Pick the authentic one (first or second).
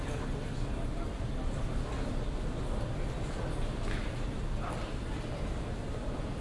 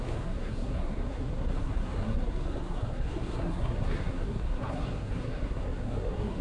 first